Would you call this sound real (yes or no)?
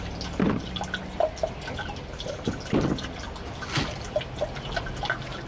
yes